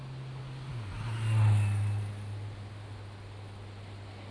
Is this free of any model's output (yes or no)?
yes